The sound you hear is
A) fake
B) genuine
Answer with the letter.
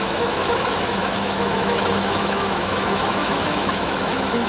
A